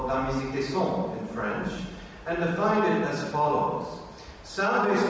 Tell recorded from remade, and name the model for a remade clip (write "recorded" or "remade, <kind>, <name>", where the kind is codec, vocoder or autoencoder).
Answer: recorded